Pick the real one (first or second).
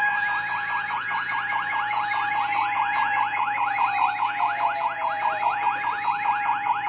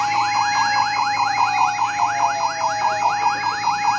second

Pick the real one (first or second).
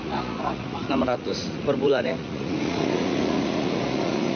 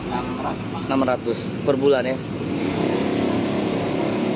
second